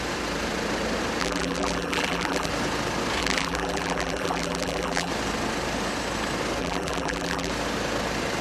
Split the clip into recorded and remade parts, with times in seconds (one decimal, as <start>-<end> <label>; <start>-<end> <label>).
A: 0.0-1.2 recorded; 1.2-2.5 remade; 2.5-3.2 recorded; 3.2-5.1 remade; 5.1-6.6 recorded; 6.6-7.5 remade; 7.5-8.4 recorded